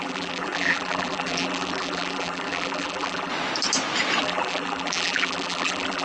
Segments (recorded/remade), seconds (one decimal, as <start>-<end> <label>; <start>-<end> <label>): 0.0-3.3 remade; 3.3-4.2 recorded; 4.2-6.0 remade